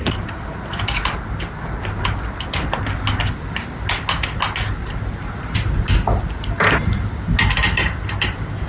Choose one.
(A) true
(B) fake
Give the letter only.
A